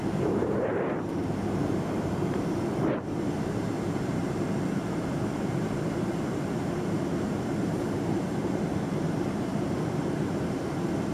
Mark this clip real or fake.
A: fake